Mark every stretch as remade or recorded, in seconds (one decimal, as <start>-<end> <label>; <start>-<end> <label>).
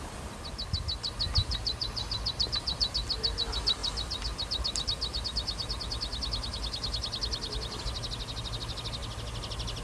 0.0-1.4 recorded; 1.4-2.9 remade; 2.9-9.8 recorded